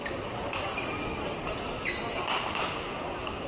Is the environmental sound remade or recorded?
recorded